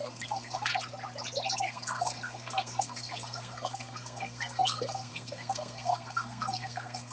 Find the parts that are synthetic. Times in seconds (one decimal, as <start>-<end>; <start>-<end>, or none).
0.0-0.7; 1.6-7.1